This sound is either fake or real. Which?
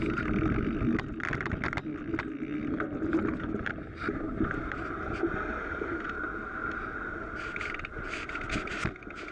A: real